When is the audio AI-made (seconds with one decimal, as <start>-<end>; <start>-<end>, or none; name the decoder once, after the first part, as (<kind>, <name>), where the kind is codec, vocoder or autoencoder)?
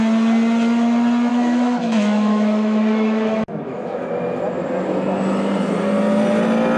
1.3-4.1 (autoencoder, DAC-VAE)